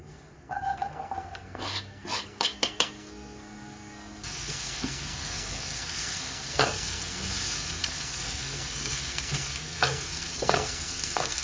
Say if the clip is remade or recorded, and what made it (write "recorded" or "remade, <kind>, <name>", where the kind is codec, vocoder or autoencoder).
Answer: remade, codec, SNAC